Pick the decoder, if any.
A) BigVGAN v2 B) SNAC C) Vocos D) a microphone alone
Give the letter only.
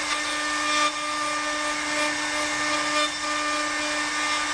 D